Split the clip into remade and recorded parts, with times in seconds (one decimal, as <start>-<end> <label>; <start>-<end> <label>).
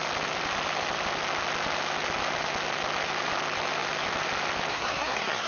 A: 0.0-4.7 recorded; 4.7-5.5 remade